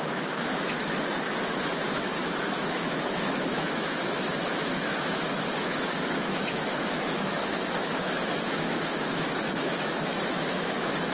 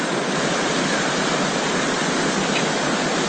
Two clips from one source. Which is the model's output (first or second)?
first